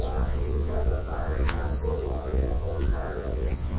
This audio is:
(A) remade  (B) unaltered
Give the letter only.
A